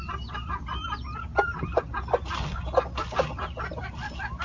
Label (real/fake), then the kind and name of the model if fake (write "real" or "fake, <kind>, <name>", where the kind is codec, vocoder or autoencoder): real